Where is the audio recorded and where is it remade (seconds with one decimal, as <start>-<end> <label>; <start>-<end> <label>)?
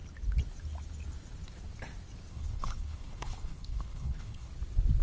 0.0-2.3 recorded; 2.3-4.5 remade; 4.5-5.0 recorded